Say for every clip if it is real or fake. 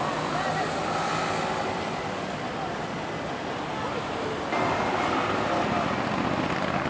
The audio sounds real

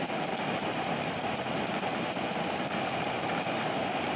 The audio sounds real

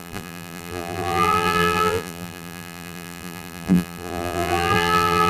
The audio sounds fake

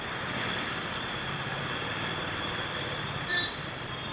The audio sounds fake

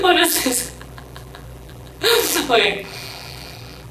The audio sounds fake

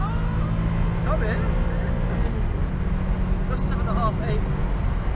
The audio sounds real